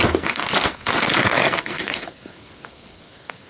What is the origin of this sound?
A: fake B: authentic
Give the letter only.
A